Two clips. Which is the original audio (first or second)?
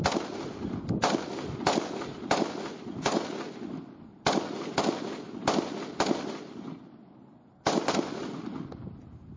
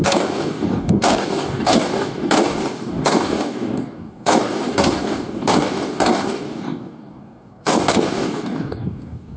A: first